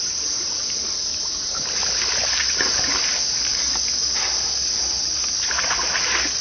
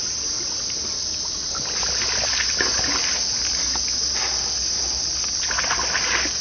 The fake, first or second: first